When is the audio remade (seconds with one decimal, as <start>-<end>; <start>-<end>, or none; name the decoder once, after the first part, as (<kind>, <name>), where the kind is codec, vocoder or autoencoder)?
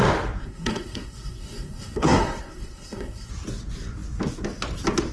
0.4-3.3 (codec, SNAC)